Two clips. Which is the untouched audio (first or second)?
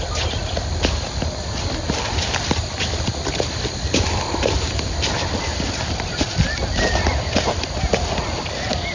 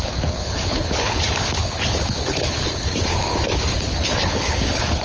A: first